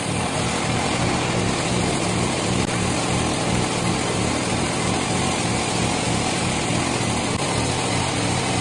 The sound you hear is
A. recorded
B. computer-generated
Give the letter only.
A